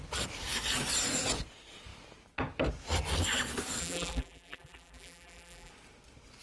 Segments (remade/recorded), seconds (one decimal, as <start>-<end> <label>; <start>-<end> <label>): 0.0-3.8 recorded; 3.8-5.7 remade; 5.7-6.4 recorded